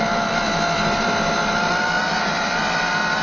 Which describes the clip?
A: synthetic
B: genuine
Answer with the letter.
B